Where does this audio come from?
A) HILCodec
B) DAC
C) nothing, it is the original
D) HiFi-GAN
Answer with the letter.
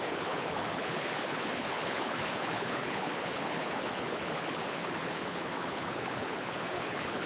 A